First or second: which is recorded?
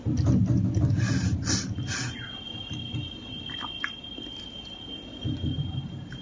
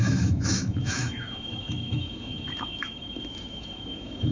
first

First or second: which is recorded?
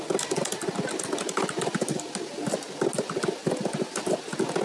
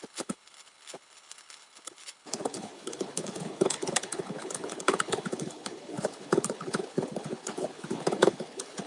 first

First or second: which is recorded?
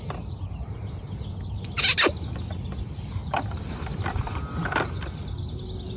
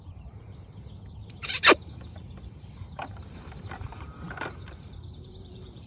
first